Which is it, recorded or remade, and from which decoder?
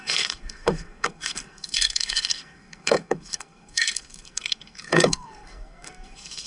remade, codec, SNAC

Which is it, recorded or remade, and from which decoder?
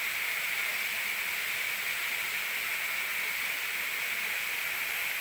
recorded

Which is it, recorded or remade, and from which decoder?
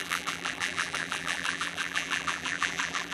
remade, vocoder, BigVGAN v2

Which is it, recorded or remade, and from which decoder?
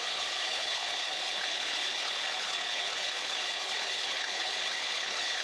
remade, codec, HILCodec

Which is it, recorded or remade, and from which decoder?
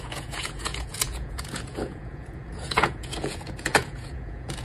remade, vocoder, Vocos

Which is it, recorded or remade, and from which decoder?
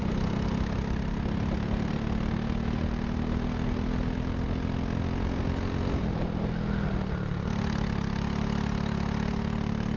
recorded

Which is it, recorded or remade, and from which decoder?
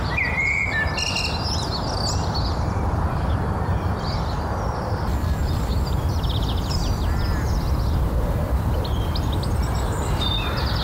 remade, vocoder, BigVGAN v2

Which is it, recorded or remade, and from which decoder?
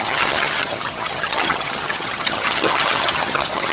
remade, vocoder, HiFi-GAN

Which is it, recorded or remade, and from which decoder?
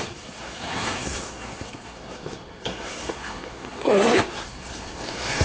remade, codec, SNAC